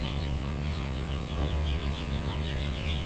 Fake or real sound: fake